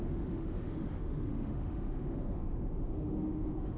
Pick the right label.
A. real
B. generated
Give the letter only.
B